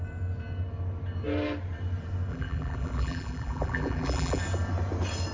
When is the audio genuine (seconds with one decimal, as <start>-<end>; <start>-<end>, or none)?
0.0-2.3; 4.4-5.3

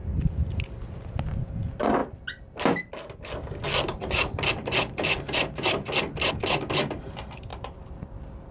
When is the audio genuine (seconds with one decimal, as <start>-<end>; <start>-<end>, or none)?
0.0-7.5